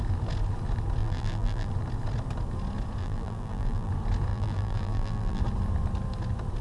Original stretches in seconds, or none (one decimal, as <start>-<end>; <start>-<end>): 0.0-1.0; 1.7-3.0; 3.9-4.3; 5.4-6.6